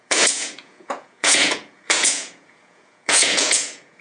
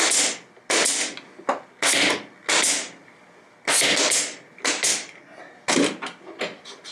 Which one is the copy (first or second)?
first